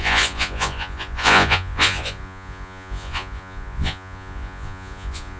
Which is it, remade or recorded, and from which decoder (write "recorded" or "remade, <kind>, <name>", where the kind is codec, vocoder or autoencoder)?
remade, vocoder, Vocos